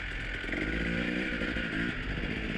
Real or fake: real